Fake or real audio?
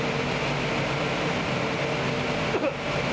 real